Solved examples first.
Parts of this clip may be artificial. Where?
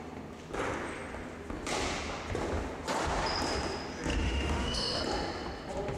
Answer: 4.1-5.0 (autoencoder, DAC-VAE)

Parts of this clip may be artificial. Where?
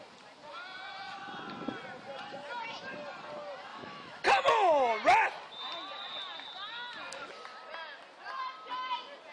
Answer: 3.7-4.2 (autoencoder, DAC-VAE)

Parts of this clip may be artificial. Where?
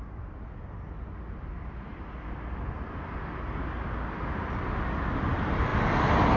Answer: none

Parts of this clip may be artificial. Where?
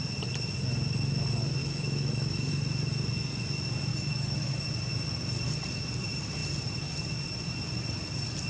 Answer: 1.6-2.5 (autoencoder, DAC-VAE); 3.9-4.5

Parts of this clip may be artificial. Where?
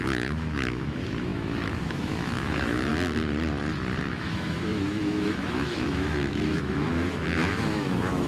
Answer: 0.0-2.9 (autoencoder, DAC-VAE); 4.0-8.3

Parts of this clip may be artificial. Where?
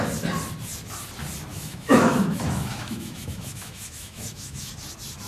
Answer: 1.5-4.7 (autoencoder, DAC-VAE)